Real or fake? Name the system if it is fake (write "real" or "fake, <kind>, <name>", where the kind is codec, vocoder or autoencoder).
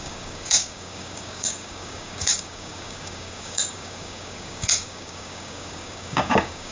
fake, codec, DAC